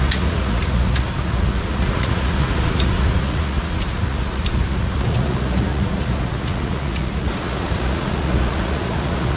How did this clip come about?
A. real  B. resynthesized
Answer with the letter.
B